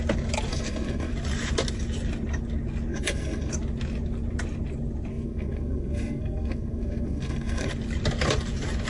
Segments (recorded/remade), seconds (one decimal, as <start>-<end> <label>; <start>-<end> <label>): 0.0-0.5 recorded; 0.5-1.1 remade; 1.1-2.9 recorded; 2.9-3.5 remade; 3.5-5.1 recorded; 5.1-7.7 remade; 7.7-8.9 recorded